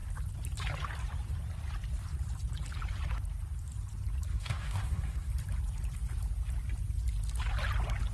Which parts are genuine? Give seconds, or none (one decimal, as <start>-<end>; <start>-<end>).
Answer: 0.0-4.3; 5.3-8.1